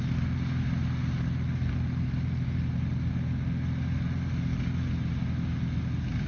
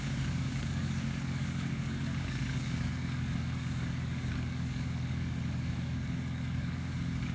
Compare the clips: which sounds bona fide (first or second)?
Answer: first